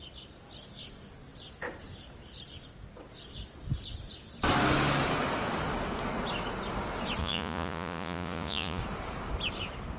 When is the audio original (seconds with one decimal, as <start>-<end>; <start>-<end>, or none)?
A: 0.0-7.2; 8.8-10.0